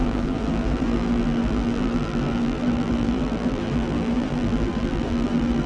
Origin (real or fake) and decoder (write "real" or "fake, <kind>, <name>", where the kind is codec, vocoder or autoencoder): fake, vocoder, BigVGAN v2